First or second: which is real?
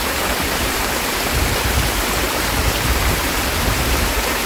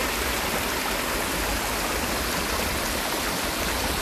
second